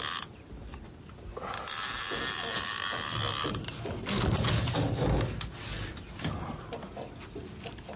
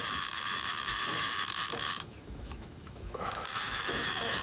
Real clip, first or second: first